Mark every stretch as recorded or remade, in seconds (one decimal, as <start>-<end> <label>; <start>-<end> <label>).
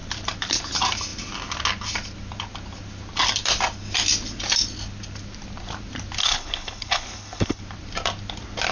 0.0-6.2 recorded; 6.2-7.6 remade; 7.6-8.7 recorded